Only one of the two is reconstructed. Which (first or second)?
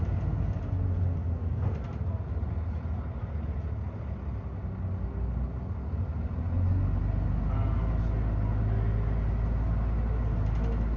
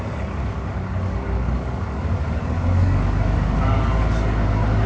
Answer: second